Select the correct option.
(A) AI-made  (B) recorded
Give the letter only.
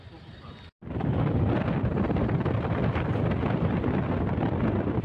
B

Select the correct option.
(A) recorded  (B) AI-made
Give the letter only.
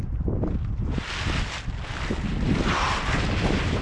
A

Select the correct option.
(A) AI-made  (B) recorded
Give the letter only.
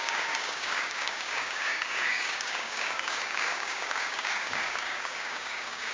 A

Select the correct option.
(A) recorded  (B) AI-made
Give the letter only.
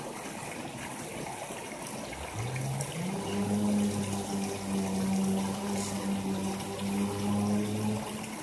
A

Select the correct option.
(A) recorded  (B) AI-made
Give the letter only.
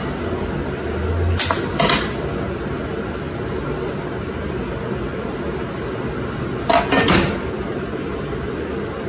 A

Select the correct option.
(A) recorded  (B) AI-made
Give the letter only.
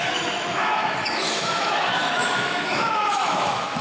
B